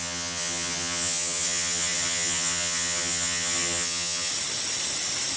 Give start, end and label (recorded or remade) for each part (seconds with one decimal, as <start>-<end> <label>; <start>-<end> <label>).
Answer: 0.0-4.3 remade; 4.3-5.4 recorded